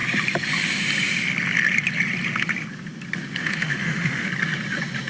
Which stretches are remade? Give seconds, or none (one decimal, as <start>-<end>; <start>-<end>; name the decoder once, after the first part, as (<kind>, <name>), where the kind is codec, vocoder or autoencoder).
3.4-4.3 (autoencoder, DAC-VAE)